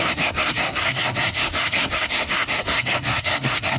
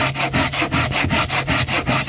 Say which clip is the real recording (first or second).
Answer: second